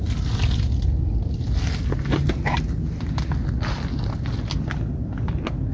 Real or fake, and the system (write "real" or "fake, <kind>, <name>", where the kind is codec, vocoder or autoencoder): real